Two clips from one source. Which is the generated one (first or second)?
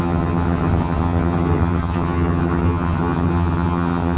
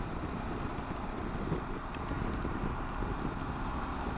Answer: first